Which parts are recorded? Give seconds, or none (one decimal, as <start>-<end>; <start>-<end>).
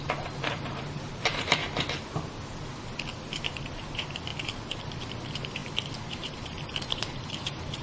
1.6-3.4; 4.3-4.8; 5.6-6.1